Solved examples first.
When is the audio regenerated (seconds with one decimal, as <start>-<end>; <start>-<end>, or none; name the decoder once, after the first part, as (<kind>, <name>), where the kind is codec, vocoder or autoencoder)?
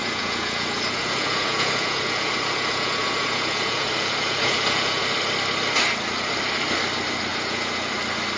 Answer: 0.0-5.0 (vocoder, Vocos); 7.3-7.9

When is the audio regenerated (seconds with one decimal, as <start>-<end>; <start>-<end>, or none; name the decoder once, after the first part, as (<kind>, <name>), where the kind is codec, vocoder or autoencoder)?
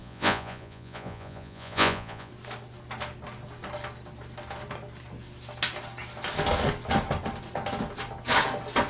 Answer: 0.0-2.3 (vocoder, Vocos)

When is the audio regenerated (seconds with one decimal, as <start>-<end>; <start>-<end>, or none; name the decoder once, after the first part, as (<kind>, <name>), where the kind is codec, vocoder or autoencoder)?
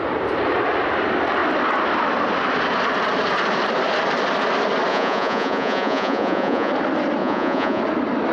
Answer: 4.9-6.7 (vocoder, Vocos); 7.2-7.8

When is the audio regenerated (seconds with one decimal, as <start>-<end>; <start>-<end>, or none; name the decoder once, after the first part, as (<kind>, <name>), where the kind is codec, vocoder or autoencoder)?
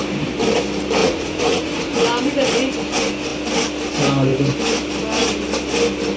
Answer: 1.0-2.0 (vocoder, Vocos)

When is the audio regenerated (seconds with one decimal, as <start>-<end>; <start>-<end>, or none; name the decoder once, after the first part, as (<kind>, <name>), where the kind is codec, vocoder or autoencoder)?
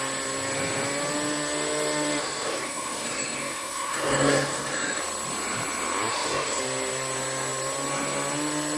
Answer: 2.2-5.0 (codec, SNAC); 6.1-6.6